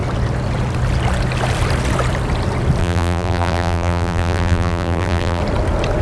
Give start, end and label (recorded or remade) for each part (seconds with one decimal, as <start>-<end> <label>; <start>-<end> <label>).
0.0-2.8 recorded; 2.8-5.4 remade; 5.4-6.0 recorded